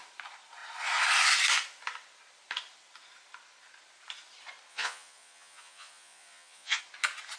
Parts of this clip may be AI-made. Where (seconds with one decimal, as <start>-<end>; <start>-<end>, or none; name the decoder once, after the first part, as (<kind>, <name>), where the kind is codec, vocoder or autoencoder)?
4.7-6.8 (vocoder, Vocos)